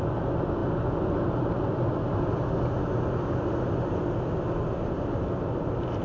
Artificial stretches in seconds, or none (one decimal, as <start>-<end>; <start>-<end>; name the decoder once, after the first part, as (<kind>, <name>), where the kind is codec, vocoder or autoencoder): none